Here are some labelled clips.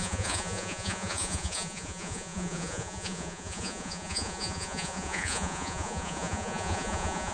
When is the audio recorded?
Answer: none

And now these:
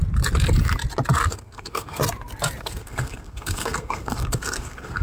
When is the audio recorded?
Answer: 0.0-1.3; 2.0-2.6

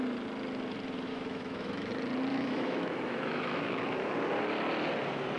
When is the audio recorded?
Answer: 0.0-1.1; 1.9-2.3; 4.1-5.4

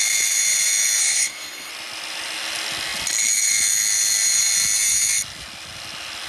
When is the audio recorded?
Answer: 0.0-1.0; 1.7-6.3